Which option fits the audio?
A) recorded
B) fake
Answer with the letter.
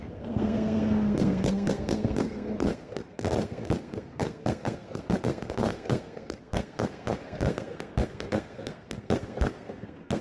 B